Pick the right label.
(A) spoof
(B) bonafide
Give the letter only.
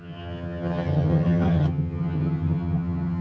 A